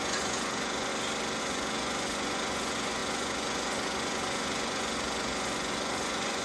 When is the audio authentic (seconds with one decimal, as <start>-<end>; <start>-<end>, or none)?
0.9-1.4